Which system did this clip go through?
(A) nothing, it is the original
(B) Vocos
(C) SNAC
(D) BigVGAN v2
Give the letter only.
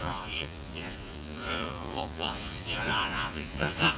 B